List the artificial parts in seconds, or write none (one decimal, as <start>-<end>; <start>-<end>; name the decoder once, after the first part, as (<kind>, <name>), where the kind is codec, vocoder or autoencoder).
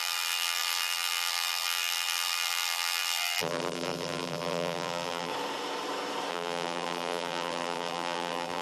0.0-5.3 (vocoder, BigVGAN v2); 6.3-8.6